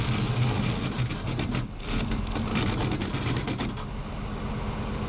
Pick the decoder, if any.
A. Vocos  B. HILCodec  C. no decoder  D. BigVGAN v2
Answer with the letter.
C